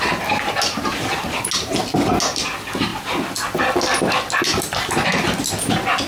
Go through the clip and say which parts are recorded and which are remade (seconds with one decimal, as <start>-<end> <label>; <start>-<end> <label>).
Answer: 0.0-6.1 recorded